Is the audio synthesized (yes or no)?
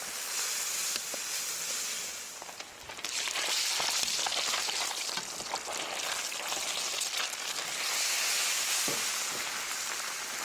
no